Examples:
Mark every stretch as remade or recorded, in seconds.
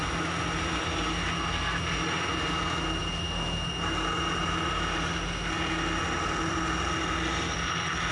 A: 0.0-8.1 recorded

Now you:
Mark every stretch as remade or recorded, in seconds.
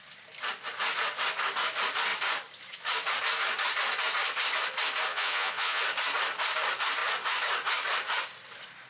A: 0.0-5.1 recorded; 5.1-5.8 remade; 5.8-8.9 recorded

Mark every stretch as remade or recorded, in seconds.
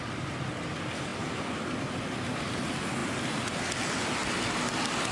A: 0.0-5.1 recorded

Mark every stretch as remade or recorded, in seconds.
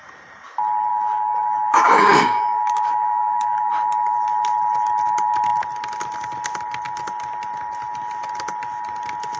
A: 0.0-0.9 recorded; 0.9-3.7 remade; 3.7-9.4 recorded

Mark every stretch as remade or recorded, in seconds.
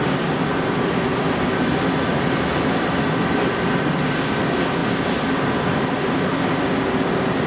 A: 0.0-7.5 recorded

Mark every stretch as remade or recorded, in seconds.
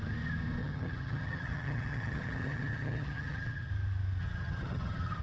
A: 0.0-0.6 recorded; 0.6-3.7 remade; 3.7-4.2 recorded; 4.2-5.2 remade